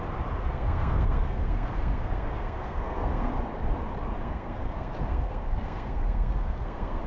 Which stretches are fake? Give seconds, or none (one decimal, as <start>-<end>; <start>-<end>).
0.4-3.3; 4.2-7.1